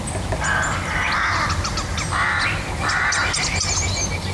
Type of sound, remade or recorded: recorded